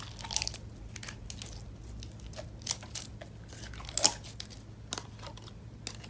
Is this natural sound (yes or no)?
yes